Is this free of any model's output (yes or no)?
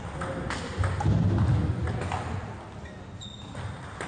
yes